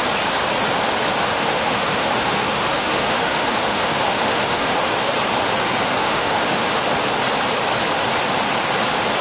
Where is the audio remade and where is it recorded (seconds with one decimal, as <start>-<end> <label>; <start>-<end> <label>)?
0.0-1.2 recorded; 1.2-5.1 remade; 5.1-6.0 recorded; 6.0-6.8 remade; 6.8-9.2 recorded